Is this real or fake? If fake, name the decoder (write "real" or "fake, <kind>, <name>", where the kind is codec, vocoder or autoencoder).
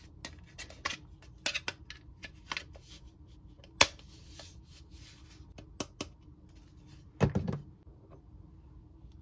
real